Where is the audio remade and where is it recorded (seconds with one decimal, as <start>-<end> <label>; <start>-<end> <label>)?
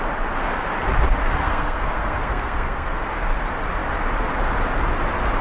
0.0-1.4 recorded; 1.4-2.9 remade; 2.9-5.4 recorded